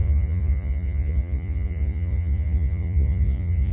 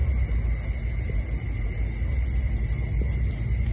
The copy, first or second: first